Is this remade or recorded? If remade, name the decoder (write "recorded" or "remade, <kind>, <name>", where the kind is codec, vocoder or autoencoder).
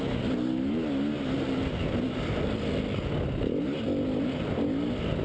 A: recorded